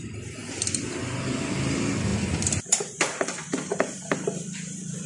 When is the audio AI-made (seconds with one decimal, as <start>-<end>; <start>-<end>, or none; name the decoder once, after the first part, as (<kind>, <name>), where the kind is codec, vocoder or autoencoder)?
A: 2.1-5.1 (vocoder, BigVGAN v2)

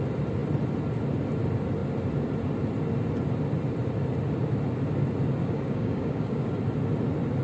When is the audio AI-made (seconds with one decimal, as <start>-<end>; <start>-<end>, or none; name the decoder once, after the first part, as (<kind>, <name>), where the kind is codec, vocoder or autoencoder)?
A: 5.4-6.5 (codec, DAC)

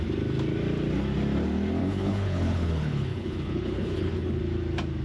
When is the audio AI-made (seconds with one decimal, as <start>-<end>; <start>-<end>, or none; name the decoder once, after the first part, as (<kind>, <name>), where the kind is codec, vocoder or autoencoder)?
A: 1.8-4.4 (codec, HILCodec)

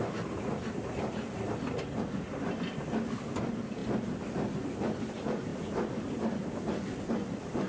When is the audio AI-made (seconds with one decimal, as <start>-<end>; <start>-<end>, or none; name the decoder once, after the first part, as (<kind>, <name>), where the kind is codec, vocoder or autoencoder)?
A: none

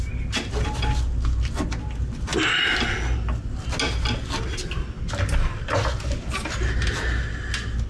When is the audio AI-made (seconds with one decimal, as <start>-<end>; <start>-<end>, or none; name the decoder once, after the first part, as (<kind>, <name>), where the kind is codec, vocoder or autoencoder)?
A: none